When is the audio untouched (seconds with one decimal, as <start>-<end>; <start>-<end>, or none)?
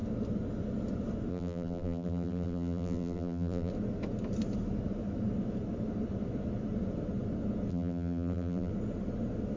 0.0-1.3; 3.7-7.7; 8.7-9.6